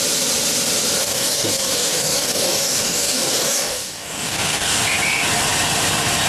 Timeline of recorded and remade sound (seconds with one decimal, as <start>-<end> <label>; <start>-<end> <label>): 0.0-1.0 recorded; 1.0-4.8 remade; 4.8-6.3 recorded